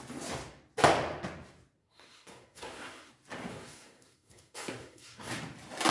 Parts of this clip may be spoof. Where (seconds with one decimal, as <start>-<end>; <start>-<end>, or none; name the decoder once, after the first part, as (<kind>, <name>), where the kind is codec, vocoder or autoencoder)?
1.8-3.1 (codec, SNAC); 3.5-5.3